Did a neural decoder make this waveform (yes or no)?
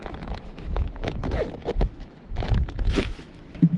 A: yes